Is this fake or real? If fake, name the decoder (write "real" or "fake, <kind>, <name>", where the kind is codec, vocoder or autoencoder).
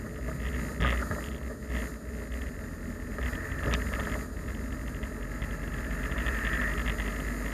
real